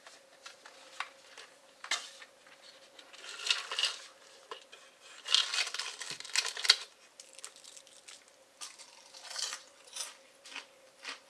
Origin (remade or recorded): recorded